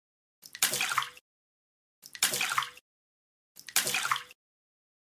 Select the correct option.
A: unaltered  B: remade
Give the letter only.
A